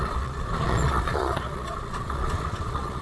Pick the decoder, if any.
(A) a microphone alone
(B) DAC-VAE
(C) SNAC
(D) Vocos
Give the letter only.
D